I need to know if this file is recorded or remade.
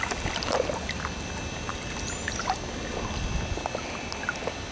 recorded